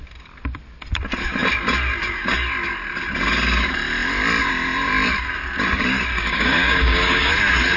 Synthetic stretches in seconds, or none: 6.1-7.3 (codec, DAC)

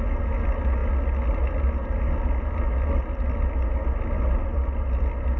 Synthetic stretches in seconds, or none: none

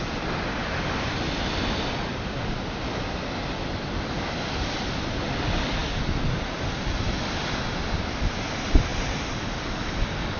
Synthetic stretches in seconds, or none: none

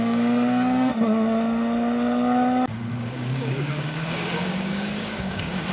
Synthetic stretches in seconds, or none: 0.0-0.9 (codec, DAC); 2.9-5.7

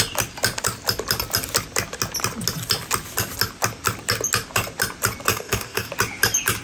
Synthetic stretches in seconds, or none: 5.3-5.9 (codec, DAC)

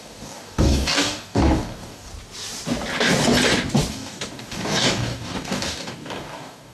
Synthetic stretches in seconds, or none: 0.0-2.1 (codec, DAC); 3.9-6.7

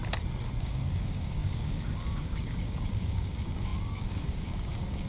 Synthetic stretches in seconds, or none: 0.6-5.1 (codec, DAC)

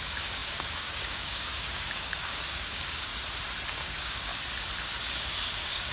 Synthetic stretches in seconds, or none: 0.0-3.1 (codec, DAC); 3.7-4.3; 5.0-5.9